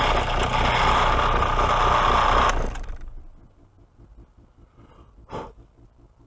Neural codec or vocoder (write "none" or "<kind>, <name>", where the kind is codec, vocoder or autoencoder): none